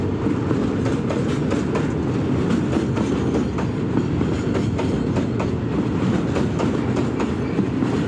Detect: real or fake real